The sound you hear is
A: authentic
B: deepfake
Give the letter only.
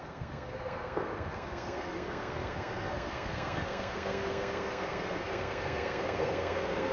B